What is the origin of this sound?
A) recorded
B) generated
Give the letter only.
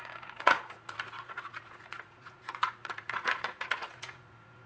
B